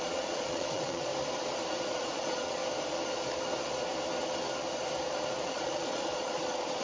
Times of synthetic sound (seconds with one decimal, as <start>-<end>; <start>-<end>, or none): 0.0-1.1; 1.8-2.6; 5.5-6.8